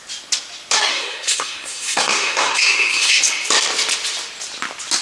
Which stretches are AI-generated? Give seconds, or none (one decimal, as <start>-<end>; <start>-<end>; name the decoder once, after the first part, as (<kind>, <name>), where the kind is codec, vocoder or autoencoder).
0.9-3.2 (codec, SNAC)

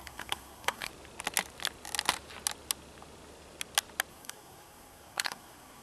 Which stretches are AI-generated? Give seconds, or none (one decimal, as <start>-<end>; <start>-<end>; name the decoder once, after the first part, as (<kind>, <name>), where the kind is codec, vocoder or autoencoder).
0.0-0.9 (codec, SNAC); 4.1-5.8

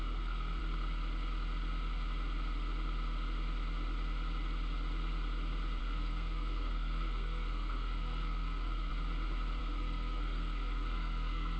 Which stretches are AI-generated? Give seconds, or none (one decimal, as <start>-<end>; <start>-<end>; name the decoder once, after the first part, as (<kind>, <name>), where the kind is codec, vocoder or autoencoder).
0.0-0.6 (codec, SNAC); 5.8-8.9; 9.6-11.6

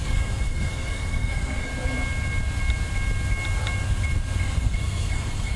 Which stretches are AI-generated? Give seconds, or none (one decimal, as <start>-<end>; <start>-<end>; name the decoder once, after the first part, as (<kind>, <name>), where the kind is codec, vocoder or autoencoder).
0.0-1.7 (codec, SNAC); 4.4-5.6

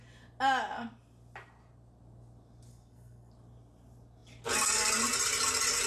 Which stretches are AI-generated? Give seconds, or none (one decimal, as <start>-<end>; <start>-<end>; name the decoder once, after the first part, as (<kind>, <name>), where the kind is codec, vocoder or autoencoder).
2.7-3.3 (codec, SNAC)

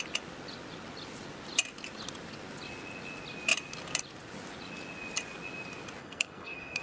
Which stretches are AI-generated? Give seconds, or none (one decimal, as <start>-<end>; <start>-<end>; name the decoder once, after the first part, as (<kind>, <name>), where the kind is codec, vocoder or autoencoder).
6.0-6.8 (codec, SNAC)

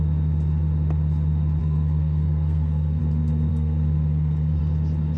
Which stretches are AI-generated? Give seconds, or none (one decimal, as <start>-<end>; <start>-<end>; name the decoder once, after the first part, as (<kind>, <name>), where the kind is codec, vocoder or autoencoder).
1.6-3.0 (codec, SNAC); 3.5-4.6

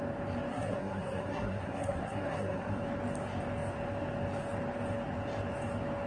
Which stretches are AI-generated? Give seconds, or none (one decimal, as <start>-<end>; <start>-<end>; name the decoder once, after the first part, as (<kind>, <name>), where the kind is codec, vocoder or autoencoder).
0.5-2.8 (codec, SNAC)